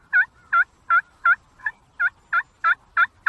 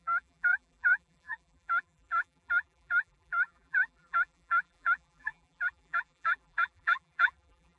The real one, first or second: first